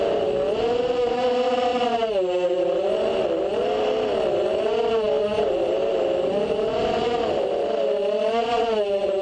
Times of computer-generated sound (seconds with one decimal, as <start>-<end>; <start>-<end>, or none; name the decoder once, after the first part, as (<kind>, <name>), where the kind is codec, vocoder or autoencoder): none